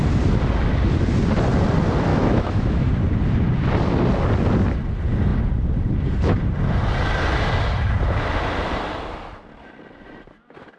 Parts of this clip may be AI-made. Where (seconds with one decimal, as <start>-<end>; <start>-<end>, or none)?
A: 2.1-2.9